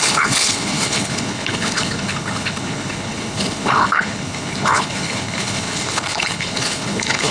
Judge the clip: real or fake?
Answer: fake